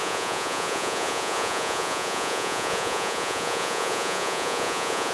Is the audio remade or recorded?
remade